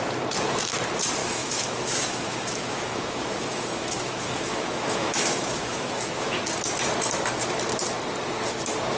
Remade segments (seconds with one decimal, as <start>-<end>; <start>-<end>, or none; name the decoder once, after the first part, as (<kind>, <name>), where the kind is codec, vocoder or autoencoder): 1.2-6.4 (autoencoder, DAC-VAE)

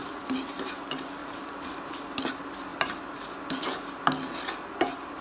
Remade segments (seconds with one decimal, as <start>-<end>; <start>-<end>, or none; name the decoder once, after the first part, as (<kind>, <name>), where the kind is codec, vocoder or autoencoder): 0.0-0.5 (vocoder, BigVGAN v2)

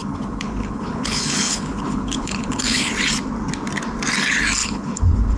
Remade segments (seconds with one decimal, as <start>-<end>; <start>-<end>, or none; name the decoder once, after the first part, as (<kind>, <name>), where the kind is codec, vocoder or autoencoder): 0.0-2.9 (codec, HILCodec); 4.6-5.4

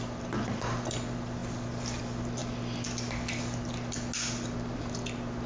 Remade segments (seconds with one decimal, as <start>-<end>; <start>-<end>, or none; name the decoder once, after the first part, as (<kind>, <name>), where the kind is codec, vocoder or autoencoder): none

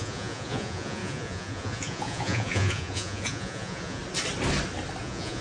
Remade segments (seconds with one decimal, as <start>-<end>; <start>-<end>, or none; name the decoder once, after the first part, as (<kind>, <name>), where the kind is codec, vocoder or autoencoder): 0.0-4.0 (vocoder, Vocos); 5.0-5.4

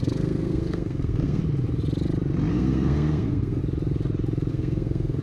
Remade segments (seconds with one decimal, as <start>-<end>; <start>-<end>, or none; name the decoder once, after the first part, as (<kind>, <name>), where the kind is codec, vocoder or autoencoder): 0.0-1.4 (codec, SNAC); 2.5-3.6; 4.5-5.2

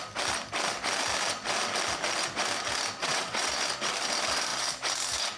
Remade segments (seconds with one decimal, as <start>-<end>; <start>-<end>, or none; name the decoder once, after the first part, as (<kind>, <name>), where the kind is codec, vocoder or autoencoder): 3.0-3.5 (vocoder, WaveNeXt)